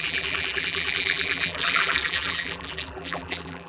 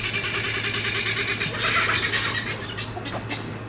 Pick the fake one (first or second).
first